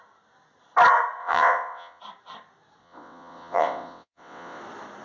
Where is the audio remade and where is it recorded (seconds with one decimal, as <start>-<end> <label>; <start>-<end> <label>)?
0.0-1.2 recorded; 1.2-2.0 remade; 2.0-2.8 recorded; 2.8-4.6 remade; 4.6-5.0 recorded